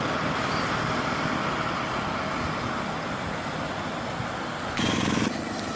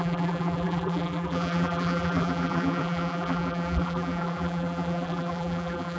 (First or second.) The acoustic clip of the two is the first